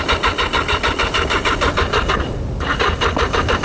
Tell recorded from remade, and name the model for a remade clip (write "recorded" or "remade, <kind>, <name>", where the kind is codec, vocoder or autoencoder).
recorded